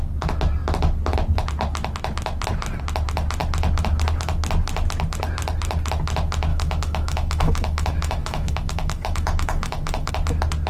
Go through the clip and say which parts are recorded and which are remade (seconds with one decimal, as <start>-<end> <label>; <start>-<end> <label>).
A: 0.0-6.5 recorded; 6.5-10.1 remade; 10.1-10.7 recorded